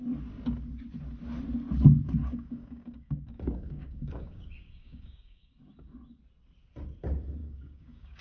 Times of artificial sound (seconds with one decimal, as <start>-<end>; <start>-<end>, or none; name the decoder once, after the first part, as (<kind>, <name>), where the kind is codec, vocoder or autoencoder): 2.2-5.5 (codec, DAC); 7.4-8.2